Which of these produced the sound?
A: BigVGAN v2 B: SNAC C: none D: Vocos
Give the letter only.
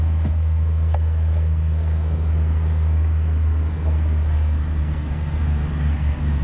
B